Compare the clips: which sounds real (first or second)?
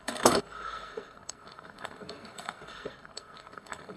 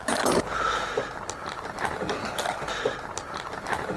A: second